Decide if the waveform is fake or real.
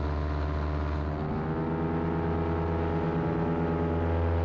real